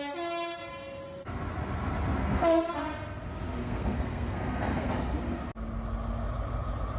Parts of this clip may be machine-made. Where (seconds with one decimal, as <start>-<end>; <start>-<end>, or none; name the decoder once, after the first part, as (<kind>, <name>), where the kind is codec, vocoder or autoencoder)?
2.2-2.7 (codec, SNAC); 3.6-4.9